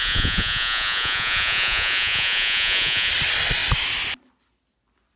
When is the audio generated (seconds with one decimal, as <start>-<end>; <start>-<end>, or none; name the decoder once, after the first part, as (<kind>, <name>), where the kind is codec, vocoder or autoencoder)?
0.0-3.1 (vocoder, Vocos)